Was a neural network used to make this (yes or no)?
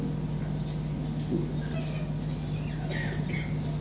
no